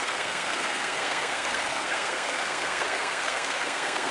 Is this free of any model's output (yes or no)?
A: no